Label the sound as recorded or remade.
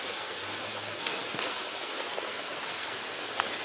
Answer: remade